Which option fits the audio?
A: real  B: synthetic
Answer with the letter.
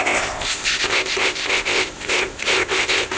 B